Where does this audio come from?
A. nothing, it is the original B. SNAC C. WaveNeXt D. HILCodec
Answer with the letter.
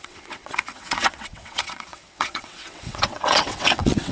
C